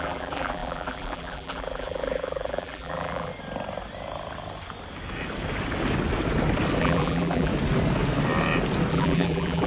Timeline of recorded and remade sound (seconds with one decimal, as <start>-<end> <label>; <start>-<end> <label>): 0.0-3.3 remade; 3.3-6.8 recorded; 6.8-7.5 remade; 7.5-8.9 recorded; 8.9-9.7 remade